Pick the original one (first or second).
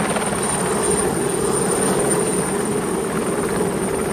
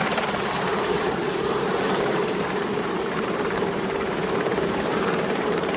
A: first